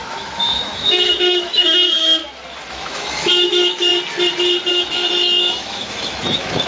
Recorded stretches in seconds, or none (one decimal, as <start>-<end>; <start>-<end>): 2.2-2.7; 3.9-4.7